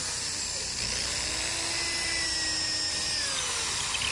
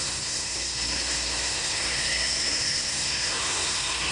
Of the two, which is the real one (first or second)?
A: first